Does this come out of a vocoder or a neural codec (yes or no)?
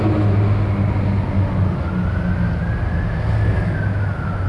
no